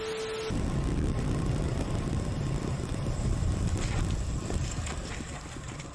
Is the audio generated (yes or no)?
no